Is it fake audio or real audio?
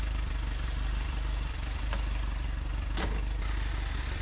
fake